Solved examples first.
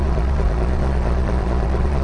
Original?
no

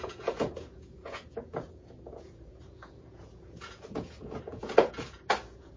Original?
no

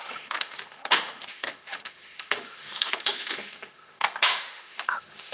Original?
no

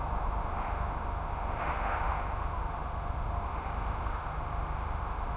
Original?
no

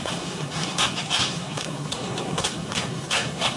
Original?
no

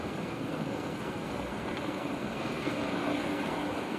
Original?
no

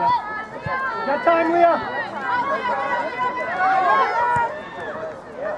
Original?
yes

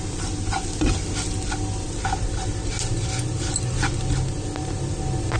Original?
yes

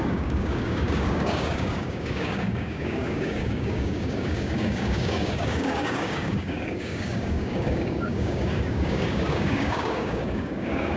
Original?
no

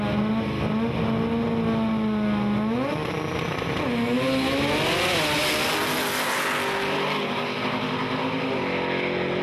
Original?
yes